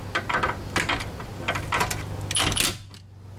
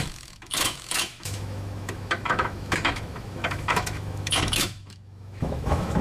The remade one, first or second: second